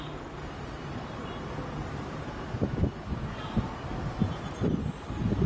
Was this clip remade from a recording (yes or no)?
yes